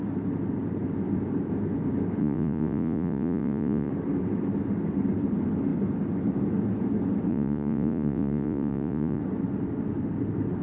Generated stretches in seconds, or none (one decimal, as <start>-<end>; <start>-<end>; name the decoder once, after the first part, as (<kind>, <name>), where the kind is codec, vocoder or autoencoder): 2.2-3.9 (vocoder, Vocos); 7.3-9.2